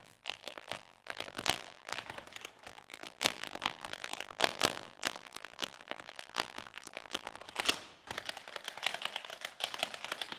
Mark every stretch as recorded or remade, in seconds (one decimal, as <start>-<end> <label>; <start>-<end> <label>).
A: 0.0-2.0 remade; 2.0-2.7 recorded; 2.7-7.4 remade; 7.4-10.4 recorded